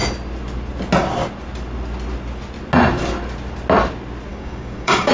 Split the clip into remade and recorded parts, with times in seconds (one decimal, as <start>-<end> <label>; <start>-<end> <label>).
0.0-4.3 recorded; 4.3-5.1 remade